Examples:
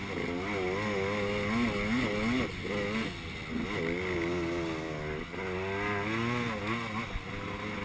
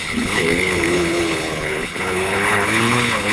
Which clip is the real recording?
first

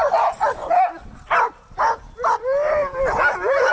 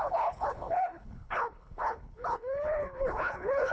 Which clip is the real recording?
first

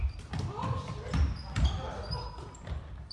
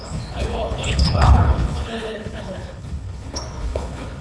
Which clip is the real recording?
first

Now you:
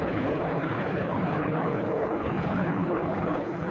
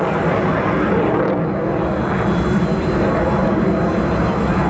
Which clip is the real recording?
second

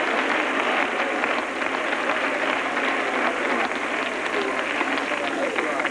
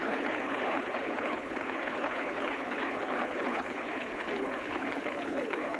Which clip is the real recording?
first